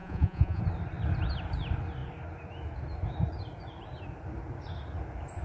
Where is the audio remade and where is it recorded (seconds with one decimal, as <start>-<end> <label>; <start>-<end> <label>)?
0.0-0.6 remade; 0.6-5.4 recorded